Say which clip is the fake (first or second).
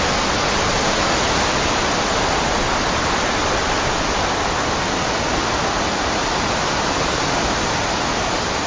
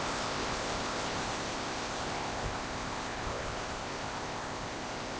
second